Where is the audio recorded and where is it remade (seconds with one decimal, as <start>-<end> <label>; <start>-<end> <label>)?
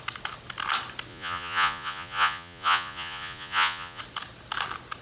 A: 0.0-1.1 recorded; 1.1-4.0 remade; 4.0-5.0 recorded